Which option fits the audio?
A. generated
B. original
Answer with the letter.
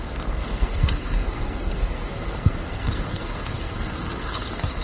A